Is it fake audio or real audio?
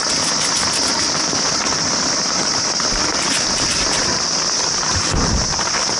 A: real